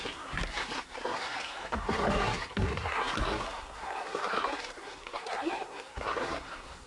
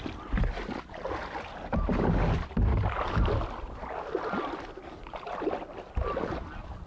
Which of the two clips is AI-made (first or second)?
first